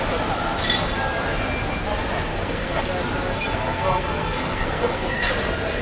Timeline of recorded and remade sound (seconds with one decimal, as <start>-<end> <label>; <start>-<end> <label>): 0.0-2.3 recorded; 2.3-2.8 remade; 2.8-3.3 recorded; 3.3-5.3 remade; 5.3-5.8 recorded